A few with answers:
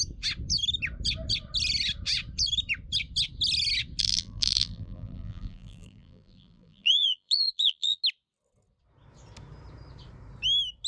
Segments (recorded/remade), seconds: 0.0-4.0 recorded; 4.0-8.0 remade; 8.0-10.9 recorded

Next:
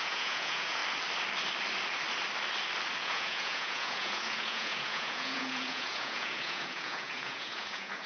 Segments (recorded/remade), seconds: 0.0-0.8 remade; 0.8-3.0 recorded; 3.0-8.1 remade

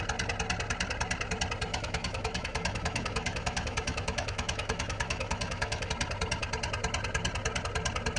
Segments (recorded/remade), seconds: 0.0-1.7 recorded; 1.7-5.9 remade; 5.9-8.2 recorded

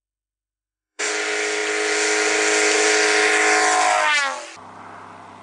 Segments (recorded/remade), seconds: 0.0-1.1 remade; 1.1-5.4 recorded

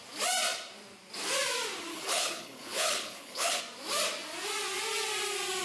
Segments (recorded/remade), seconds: 0.0-1.9 recorded; 1.9-3.6 remade; 3.6-5.6 recorded

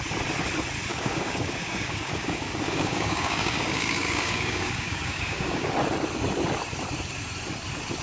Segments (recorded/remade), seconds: 0.0-0.9 recorded; 0.9-5.7 remade; 5.7-8.0 recorded

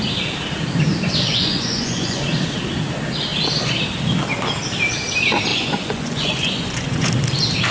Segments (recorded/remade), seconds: 0.0-1.3 recorded; 1.3-2.2 remade; 2.2-5.5 recorded; 5.5-7.1 remade; 7.1-7.7 recorded

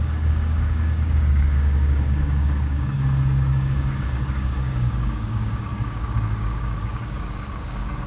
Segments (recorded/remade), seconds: 0.0-8.1 remade